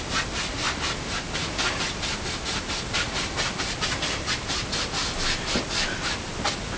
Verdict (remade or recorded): recorded